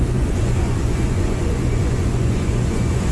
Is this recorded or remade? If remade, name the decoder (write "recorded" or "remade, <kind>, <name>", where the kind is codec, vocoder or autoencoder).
remade, vocoder, Vocos